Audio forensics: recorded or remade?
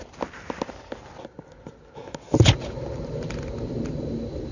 recorded